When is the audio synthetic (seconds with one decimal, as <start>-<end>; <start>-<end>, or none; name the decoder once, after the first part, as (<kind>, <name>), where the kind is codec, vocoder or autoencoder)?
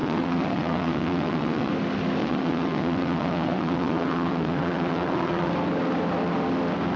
0.0-1.7 (vocoder, WaveNeXt); 2.2-5.5